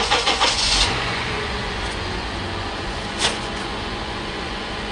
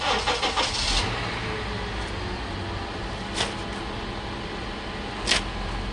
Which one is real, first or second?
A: second